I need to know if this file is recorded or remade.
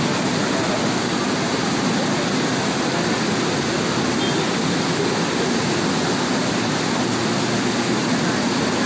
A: recorded